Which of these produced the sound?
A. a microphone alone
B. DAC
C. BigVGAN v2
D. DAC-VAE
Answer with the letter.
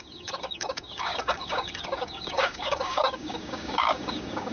B